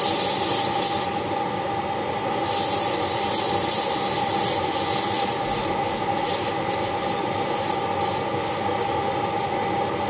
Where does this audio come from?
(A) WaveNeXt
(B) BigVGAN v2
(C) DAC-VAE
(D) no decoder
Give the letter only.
D